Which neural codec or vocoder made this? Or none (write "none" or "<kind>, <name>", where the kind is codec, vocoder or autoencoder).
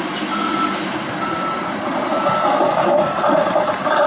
none